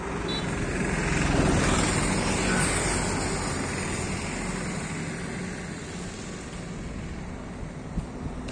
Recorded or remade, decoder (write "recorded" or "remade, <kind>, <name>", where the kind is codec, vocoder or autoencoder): recorded